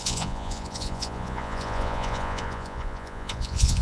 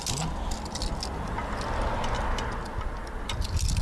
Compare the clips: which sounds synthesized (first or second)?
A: first